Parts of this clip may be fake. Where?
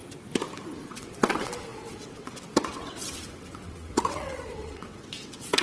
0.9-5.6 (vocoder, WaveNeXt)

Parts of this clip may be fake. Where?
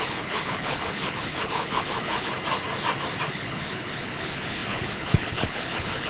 0.0-2.3 (codec, HILCodec); 3.3-6.1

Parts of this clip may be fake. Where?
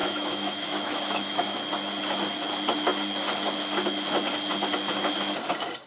0.0-1.6 (autoencoder, DAC-VAE)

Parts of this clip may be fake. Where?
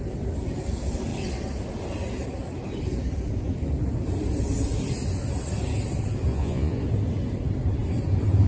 6.3-6.8 (vocoder, Vocos)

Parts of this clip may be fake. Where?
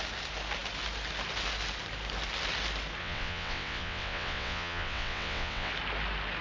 3.0-5.7 (vocoder, WaveNeXt)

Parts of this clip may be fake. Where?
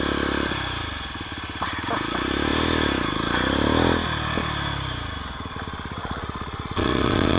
6.0-7.4 (vocoder, Vocos)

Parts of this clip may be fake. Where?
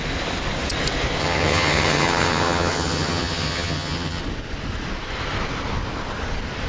1.2-4.2 (vocoder, HiFi-GAN)